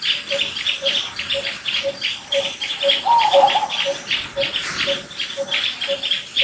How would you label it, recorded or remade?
remade